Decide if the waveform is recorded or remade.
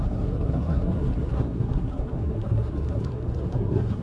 remade